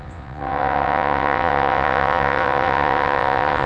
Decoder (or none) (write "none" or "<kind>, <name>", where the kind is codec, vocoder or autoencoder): vocoder, WaveNeXt